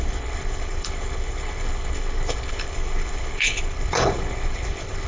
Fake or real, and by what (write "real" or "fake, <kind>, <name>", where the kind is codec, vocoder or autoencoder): fake, codec, HILCodec